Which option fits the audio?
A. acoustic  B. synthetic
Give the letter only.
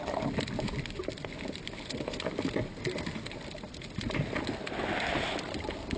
A